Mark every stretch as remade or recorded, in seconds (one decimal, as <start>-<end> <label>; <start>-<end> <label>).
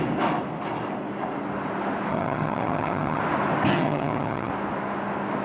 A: 0.0-2.1 recorded; 2.1-3.2 remade; 3.2-3.7 recorded; 3.7-4.5 remade; 4.5-5.4 recorded